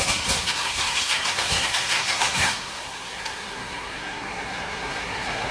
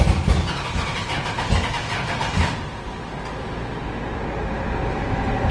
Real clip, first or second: second